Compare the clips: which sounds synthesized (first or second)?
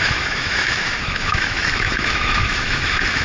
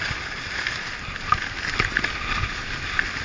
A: first